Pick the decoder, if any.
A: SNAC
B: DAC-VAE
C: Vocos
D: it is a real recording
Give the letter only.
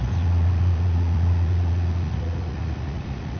C